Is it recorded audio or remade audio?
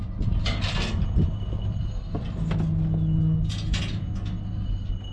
recorded